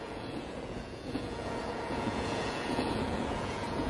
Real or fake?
fake